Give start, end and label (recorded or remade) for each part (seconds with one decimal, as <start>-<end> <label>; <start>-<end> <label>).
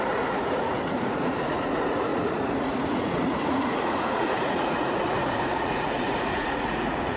0.0-7.2 remade